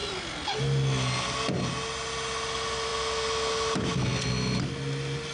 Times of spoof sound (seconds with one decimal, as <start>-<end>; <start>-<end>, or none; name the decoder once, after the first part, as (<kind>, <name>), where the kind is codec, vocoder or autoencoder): none